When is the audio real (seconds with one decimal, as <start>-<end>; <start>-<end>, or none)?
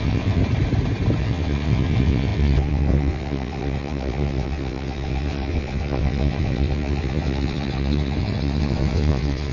0.4-1.2